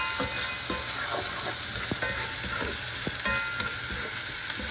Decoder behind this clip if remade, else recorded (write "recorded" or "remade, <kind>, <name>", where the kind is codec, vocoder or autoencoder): recorded